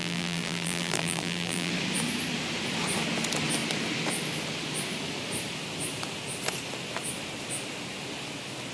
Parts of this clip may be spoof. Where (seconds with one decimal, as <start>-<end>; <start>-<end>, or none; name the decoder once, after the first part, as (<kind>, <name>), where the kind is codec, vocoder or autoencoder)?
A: 0.0-1.7 (vocoder, BigVGAN v2)